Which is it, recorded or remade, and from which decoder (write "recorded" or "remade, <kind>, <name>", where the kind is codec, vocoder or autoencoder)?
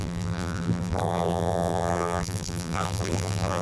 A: remade, vocoder, BigVGAN v2